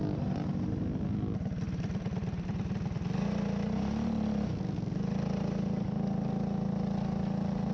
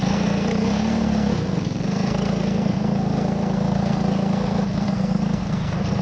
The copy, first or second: second